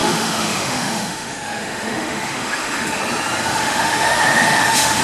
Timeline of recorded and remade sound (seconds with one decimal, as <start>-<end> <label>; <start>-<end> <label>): 0.0-3.0 remade; 3.0-3.5 recorded; 3.5-5.0 remade